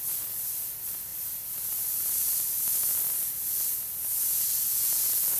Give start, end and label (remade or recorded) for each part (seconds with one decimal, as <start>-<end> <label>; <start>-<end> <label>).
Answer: 0.0-4.7 recorded; 4.7-5.4 remade